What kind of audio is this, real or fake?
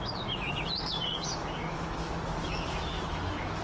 fake